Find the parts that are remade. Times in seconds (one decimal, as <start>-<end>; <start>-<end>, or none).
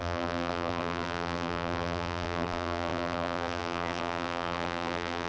0.0-5.3